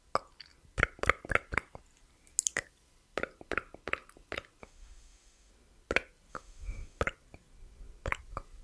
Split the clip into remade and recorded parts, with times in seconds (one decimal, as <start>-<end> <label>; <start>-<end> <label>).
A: 0.0-4.6 recorded; 4.6-5.5 remade; 5.5-6.3 recorded; 6.3-7.0 remade; 7.0-8.6 recorded